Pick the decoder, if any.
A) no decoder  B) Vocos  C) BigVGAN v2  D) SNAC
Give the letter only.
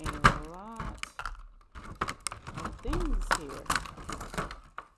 A